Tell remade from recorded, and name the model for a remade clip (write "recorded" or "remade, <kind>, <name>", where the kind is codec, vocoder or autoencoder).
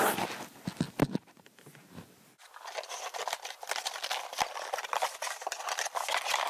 recorded